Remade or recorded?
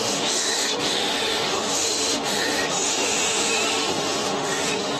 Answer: remade